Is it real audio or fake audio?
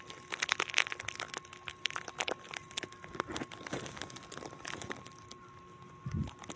real